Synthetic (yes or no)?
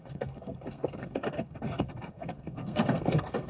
yes